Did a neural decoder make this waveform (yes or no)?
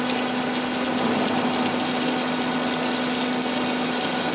no